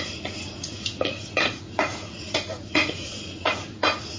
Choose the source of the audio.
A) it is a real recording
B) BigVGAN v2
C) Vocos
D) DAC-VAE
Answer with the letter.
C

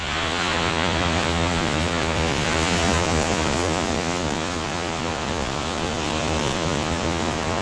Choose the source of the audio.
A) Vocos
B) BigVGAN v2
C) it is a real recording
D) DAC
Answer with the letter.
A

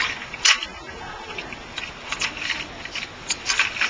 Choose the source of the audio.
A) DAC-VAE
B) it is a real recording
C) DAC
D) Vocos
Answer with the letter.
B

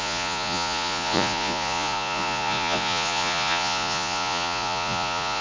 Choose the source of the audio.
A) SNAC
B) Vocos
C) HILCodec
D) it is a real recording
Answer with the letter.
B